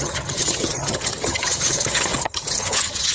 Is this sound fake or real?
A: fake